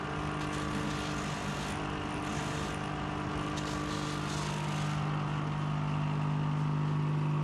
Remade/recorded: recorded